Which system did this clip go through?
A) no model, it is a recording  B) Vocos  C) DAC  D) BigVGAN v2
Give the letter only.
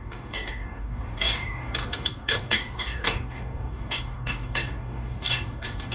C